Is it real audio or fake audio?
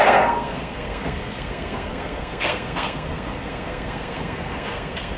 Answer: fake